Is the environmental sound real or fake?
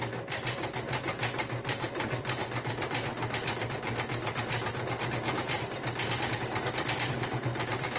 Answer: real